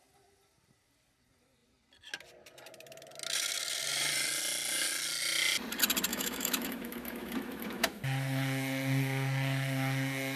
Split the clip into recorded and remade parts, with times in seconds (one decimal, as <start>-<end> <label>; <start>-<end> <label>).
0.0-6.1 recorded; 6.1-8.0 remade; 8.0-10.4 recorded